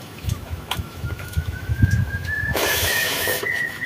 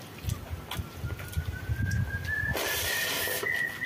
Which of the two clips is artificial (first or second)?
first